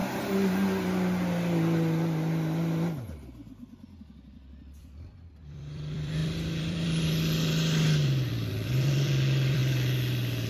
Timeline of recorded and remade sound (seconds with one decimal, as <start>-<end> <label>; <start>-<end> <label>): 0.0-4.0 recorded; 4.0-10.5 remade